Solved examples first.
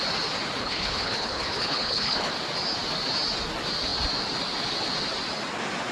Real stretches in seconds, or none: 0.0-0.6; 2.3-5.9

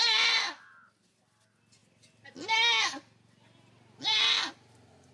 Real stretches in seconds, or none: 0.0-5.1

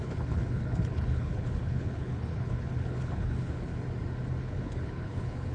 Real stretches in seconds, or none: 3.7-4.4

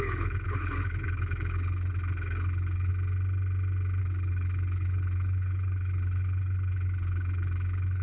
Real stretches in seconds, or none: 2.9-4.0

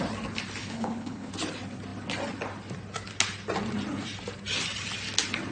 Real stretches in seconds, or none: 0.0-0.6; 1.3-5.5

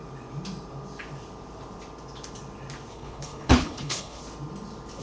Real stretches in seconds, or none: 0.0-2.9; 4.2-5.0

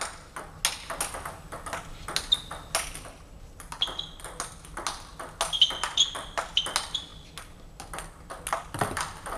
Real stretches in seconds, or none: 0.0-9.4

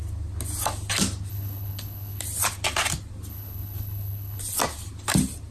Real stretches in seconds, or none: 0.0-1.3; 2.2-3.3; 4.4-5.5